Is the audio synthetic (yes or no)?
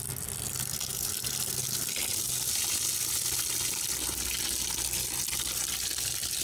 no